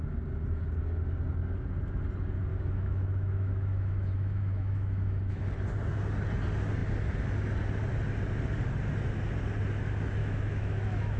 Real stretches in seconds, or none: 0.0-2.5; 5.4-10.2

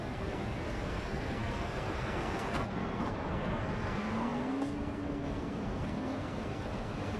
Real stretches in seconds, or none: none

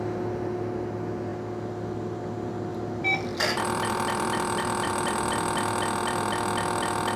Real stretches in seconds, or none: 0.0-2.7; 4.9-7.2

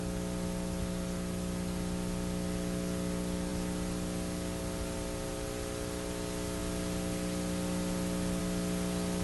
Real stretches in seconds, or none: 0.0-9.2

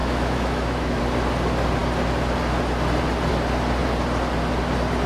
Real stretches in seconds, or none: 1.0-5.1

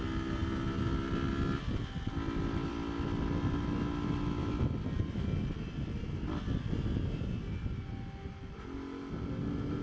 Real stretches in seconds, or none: 0.0-9.8

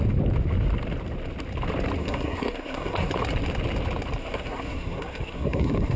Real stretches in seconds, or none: 0.0-2.0; 3.1-4.2